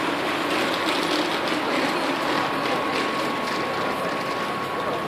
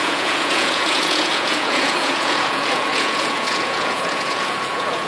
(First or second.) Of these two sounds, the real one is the first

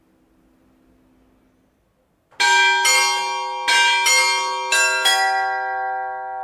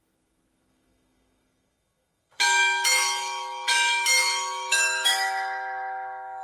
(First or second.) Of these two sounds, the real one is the first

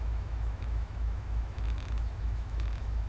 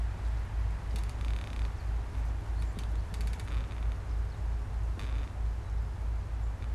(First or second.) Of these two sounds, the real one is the second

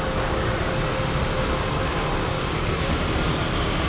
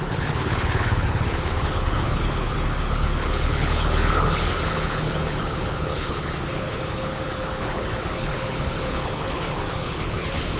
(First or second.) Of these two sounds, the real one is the first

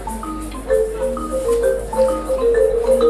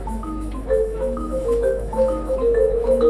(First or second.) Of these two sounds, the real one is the first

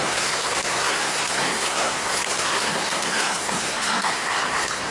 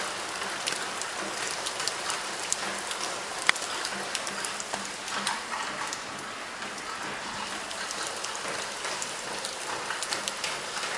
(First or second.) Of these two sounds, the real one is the second